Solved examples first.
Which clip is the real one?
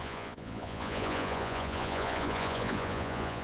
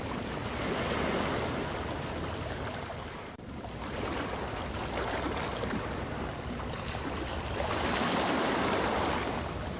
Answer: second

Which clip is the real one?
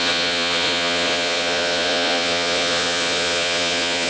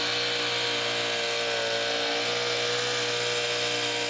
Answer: second